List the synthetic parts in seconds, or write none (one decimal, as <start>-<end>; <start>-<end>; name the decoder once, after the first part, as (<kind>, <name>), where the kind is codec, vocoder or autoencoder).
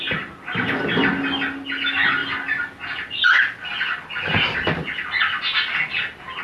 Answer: none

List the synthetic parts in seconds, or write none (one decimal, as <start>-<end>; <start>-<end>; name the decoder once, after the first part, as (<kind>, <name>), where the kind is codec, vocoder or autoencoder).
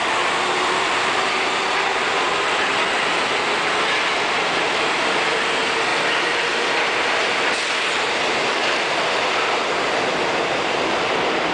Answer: none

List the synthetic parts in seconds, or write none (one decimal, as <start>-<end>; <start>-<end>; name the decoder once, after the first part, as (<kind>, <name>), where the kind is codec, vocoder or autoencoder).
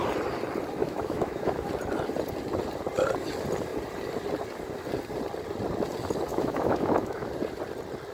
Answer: 0.8-1.7 (autoencoder, DAC-VAE); 6.3-7.3